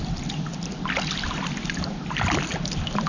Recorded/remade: recorded